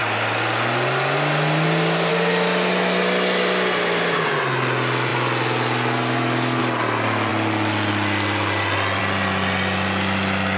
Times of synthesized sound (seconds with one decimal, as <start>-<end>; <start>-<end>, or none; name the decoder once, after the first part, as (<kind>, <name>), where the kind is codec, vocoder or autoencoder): none